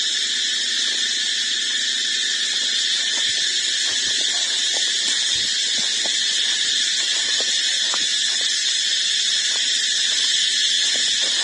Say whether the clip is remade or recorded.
recorded